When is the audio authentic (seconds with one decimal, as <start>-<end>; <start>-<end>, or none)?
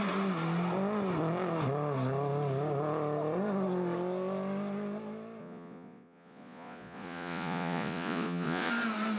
0.0-5.4; 8.7-9.2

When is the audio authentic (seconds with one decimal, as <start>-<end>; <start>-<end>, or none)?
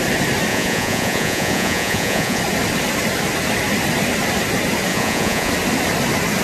0.0-0.5; 2.4-4.9; 5.5-6.4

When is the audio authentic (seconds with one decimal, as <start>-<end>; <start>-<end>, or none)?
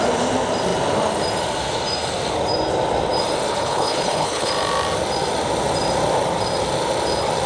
0.0-3.5; 4.5-7.5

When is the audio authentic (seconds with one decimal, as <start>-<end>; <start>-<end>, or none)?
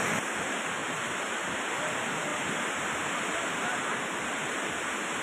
0.0-5.2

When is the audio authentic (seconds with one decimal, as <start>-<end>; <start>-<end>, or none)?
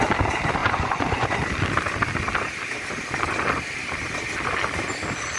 0.0-0.6; 1.4-5.4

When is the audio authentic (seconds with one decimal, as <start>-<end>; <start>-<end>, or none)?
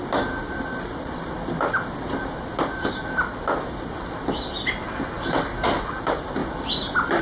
0.0-7.2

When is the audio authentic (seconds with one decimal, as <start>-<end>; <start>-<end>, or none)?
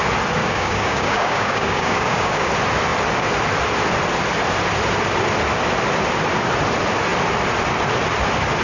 0.0-0.4; 2.5-8.6